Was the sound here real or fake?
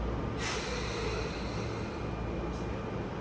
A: real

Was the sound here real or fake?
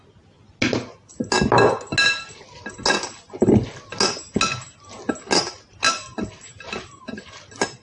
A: real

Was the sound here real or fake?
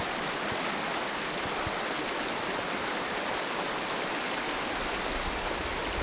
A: real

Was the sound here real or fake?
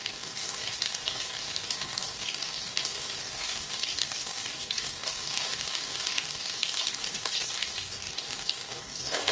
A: fake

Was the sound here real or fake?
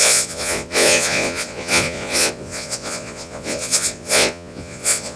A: fake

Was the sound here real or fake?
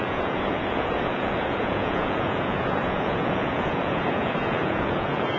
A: fake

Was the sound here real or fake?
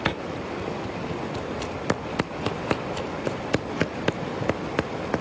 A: real